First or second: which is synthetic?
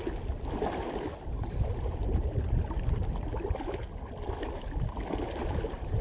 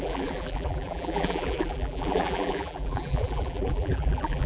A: second